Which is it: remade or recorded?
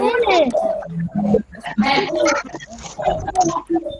recorded